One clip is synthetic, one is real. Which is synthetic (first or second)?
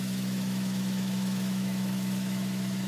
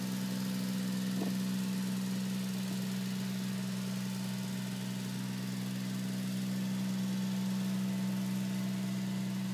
first